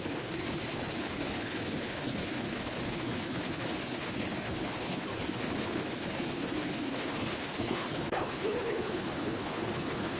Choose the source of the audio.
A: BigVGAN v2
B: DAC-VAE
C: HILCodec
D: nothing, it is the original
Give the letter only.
C